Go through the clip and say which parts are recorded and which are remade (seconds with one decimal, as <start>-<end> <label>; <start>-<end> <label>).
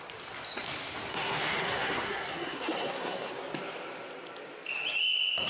0.0-1.1 recorded; 1.1-3.3 remade; 3.3-5.5 recorded